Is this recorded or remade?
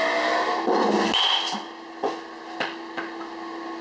recorded